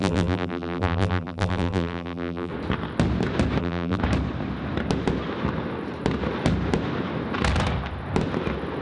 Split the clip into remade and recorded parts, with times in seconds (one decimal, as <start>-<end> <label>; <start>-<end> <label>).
0.0-2.5 remade; 2.5-3.6 recorded; 3.6-4.0 remade; 4.0-8.8 recorded